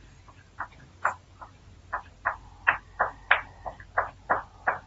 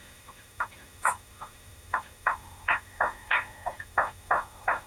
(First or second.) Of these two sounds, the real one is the first